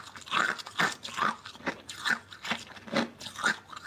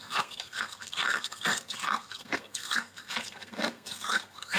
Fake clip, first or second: second